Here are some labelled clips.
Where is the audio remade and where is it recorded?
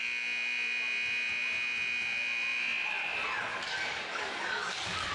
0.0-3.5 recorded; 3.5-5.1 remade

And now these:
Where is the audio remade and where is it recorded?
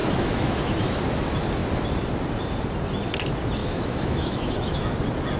0.0-0.6 remade; 0.6-3.6 recorded; 3.6-4.9 remade; 4.9-5.4 recorded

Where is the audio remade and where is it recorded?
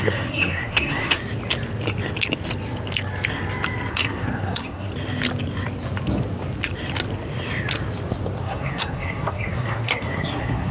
0.0-1.2 remade; 1.2-3.9 recorded; 3.9-4.9 remade; 4.9-8.4 recorded; 8.4-10.7 remade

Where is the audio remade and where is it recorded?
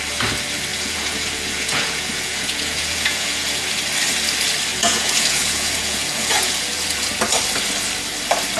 0.0-0.7 recorded; 0.7-3.7 remade; 3.7-4.7 recorded; 4.7-7.1 remade; 7.1-8.6 recorded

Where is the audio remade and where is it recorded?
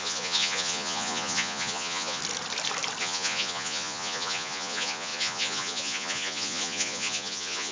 0.0-2.2 remade; 2.2-3.0 recorded; 3.0-7.7 remade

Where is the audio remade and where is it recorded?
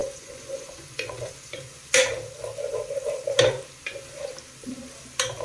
0.0-1.6 remade; 1.6-5.4 recorded